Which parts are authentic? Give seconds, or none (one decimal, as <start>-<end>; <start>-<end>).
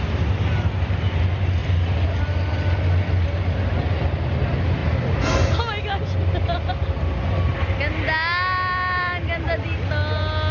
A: 0.0-10.5